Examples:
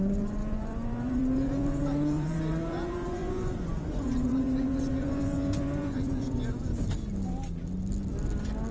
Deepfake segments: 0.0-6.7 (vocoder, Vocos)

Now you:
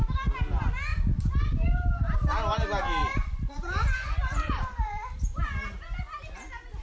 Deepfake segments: 3.0-5.4 (vocoder, BigVGAN v2)

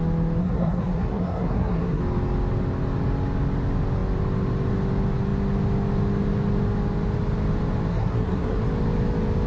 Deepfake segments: 0.4-2.0 (codec, SNAC); 7.9-8.6

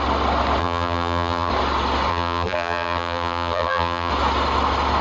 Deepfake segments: 0.6-1.5 (vocoder, BigVGAN v2); 2.1-4.1

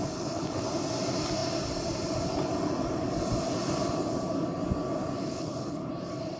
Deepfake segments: 0.0-0.6 (codec, HILCodec); 5.2-5.9

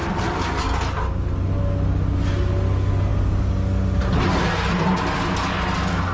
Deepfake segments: 0.0-0.6 (vocoder, BigVGAN v2)

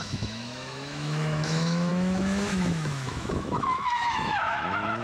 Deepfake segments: 0.0-5.0 (autoencoder, DAC-VAE)

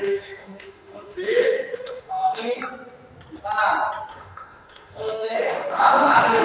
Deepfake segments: 0.0-2.6 (autoencoder, DAC-VAE); 4.1-6.4